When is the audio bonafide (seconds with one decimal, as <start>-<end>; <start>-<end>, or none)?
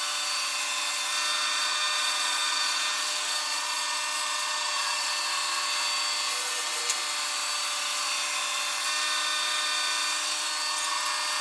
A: 0.0-1.3; 5.1-6.3; 6.8-11.4